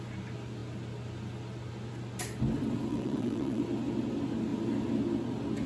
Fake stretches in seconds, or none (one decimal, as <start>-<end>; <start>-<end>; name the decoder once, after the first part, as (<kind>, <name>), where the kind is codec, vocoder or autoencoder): 2.9-3.6 (vocoder, WaveNeXt)